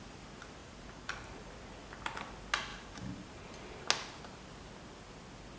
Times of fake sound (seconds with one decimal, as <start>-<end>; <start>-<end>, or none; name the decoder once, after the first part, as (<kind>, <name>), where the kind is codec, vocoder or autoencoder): 0.6-1.5 (vocoder, BigVGAN v2); 2.7-3.6

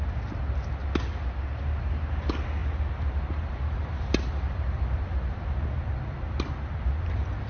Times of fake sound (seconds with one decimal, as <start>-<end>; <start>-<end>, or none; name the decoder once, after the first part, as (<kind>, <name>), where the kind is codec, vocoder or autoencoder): none